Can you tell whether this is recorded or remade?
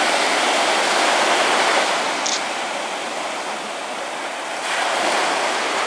recorded